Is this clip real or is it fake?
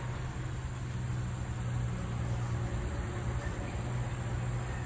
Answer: real